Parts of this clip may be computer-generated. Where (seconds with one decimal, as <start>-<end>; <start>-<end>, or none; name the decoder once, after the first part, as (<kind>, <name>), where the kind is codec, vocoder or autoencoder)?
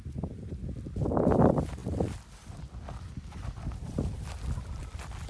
none